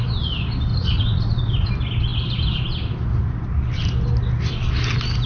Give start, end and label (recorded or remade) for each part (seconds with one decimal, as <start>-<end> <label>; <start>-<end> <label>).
0.0-0.7 recorded; 0.7-1.7 remade; 1.7-5.3 recorded

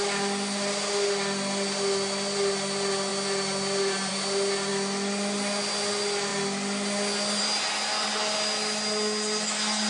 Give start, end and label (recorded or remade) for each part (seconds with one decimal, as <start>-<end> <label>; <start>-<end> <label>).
0.0-9.9 recorded

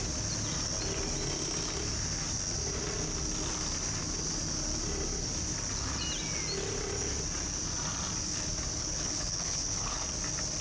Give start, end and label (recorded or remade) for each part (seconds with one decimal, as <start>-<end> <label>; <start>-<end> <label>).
0.0-8.8 recorded; 8.8-10.0 remade; 10.0-10.6 recorded

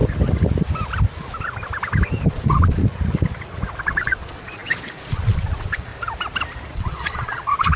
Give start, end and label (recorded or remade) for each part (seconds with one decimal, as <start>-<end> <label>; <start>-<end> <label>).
0.0-2.3 recorded; 2.3-2.8 remade; 2.8-3.8 recorded; 3.8-5.9 remade; 5.9-6.7 recorded; 6.7-7.8 remade

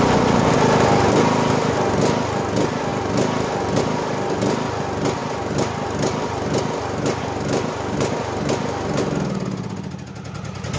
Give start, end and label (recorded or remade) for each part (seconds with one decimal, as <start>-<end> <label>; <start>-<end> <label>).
0.0-10.8 recorded

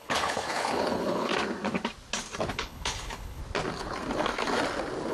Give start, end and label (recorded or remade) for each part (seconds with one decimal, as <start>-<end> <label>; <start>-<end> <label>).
0.0-1.3 remade; 1.3-2.5 recorded; 2.5-3.4 remade; 3.4-5.1 recorded

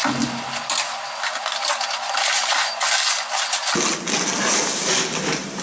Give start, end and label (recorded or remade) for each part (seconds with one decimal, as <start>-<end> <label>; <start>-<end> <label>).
0.0-5.6 recorded